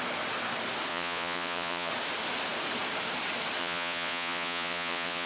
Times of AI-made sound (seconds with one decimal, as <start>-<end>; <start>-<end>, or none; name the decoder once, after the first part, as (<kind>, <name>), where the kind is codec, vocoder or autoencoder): 0.9-1.9 (vocoder, Vocos); 3.6-5.3